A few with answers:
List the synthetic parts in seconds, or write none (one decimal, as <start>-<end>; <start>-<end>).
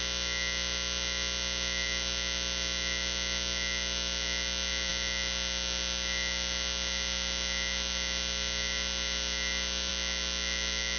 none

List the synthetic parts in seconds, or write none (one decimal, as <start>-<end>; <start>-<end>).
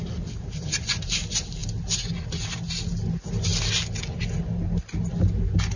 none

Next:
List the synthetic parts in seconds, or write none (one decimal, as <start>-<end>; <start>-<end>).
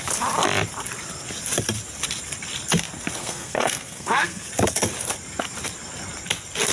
3.2-4.5